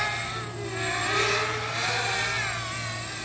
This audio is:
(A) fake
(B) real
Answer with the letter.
B